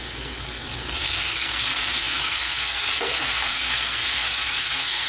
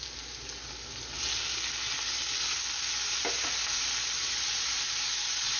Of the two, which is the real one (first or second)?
second